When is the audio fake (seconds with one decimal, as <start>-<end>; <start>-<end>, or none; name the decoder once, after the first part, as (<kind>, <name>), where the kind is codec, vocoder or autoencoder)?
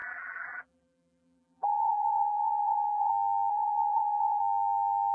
0.0-3.1 (vocoder, BigVGAN v2); 3.5-4.4